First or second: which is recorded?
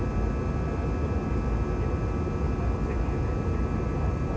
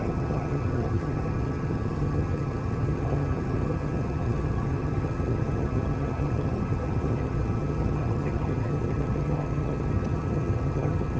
first